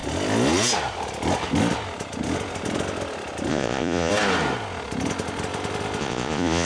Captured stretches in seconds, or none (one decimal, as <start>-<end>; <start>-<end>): 0.0-3.5; 4.1-6.0

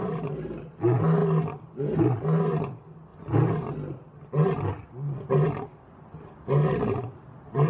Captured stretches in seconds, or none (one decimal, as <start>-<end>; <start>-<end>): 0.0-7.7

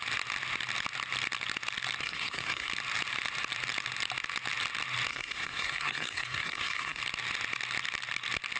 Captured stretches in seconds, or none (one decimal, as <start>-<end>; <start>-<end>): 0.0-2.0; 2.7-5.1; 7.0-8.6

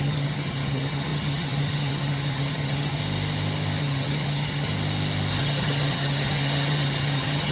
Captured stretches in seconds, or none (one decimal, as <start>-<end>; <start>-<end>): 3.0-3.8; 4.7-5.4

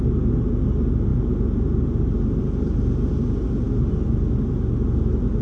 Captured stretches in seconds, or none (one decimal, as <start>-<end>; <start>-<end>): 0.0-5.4

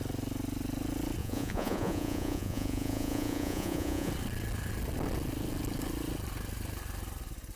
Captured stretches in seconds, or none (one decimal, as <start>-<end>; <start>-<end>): 0.0-1.2; 4.1-7.6